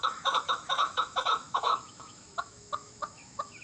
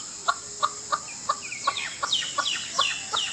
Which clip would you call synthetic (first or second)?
first